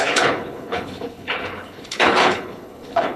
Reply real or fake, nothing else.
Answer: fake